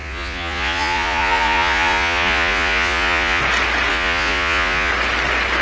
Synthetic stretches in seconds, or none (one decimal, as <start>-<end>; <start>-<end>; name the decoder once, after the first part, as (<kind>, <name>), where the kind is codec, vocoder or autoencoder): 0.0-3.4 (vocoder, Vocos); 3.9-4.9